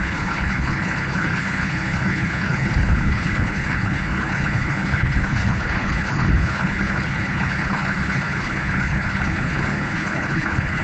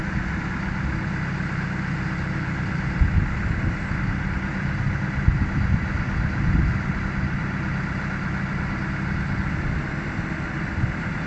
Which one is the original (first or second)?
second